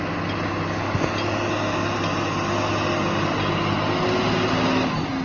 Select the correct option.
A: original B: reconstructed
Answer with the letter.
A